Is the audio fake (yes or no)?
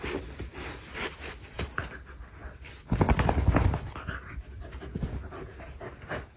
no